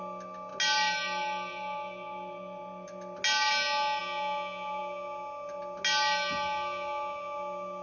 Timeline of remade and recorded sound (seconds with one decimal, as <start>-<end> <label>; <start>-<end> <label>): 0.0-7.8 recorded